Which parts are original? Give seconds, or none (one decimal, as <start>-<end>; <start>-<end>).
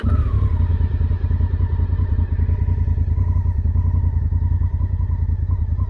0.0-5.9